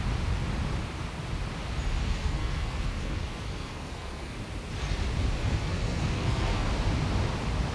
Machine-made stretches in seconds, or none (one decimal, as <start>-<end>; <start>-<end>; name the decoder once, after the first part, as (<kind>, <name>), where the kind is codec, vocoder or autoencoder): 2.0-4.4 (codec, SNAC); 5.4-6.7